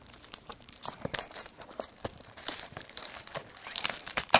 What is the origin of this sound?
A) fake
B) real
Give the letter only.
A